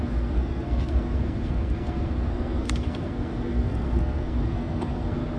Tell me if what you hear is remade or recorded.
remade